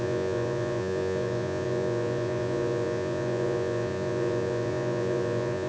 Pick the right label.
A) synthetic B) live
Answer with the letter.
A